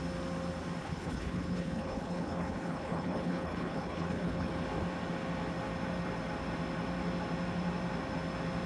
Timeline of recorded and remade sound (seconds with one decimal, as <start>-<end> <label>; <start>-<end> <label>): 0.0-0.8 recorded; 0.8-4.5 remade; 4.5-8.7 recorded